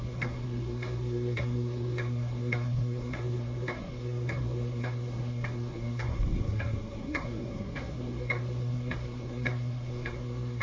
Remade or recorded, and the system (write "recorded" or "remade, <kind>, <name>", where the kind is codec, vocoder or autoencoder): remade, codec, SNAC